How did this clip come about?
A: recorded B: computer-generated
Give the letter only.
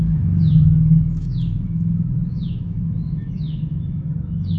B